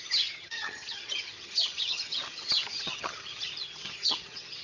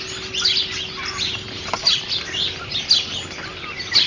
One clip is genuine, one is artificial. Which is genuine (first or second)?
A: second